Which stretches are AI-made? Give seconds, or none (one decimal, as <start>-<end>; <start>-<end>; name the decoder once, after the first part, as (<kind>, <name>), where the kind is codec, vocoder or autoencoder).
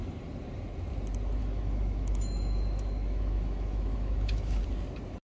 1.4-4.6 (autoencoder, DAC-VAE)